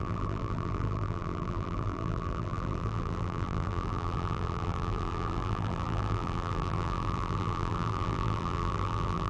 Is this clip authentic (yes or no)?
no